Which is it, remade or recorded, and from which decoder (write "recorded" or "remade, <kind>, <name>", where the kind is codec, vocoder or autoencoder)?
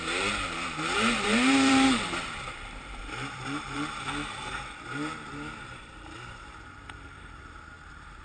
remade, vocoder, BigVGAN v2